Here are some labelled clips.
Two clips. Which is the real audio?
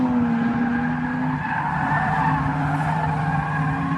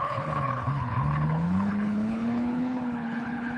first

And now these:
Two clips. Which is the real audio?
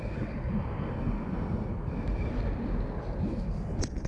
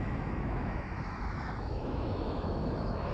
first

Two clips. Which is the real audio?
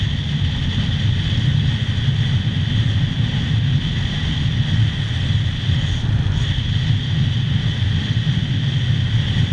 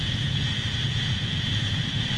first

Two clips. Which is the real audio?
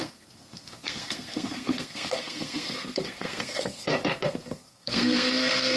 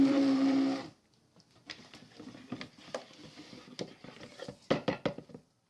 second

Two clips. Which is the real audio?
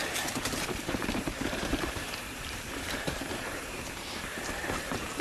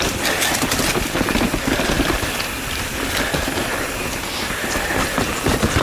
second